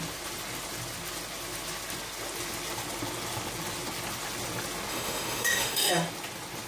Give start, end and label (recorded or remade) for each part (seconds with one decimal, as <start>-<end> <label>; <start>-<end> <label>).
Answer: 0.0-4.9 recorded; 4.9-5.9 remade; 5.9-6.7 recorded